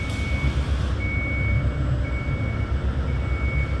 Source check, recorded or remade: recorded